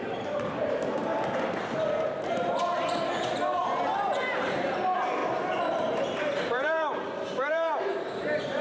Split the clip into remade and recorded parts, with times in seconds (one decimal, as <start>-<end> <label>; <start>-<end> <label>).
0.0-1.1 remade; 1.1-4.4 recorded; 4.4-5.2 remade; 5.2-6.5 recorded; 6.5-8.6 remade